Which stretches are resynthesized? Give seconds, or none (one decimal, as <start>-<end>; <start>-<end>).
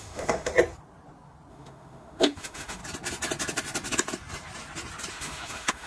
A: 0.0-0.5; 1.5-2.8; 5.1-5.9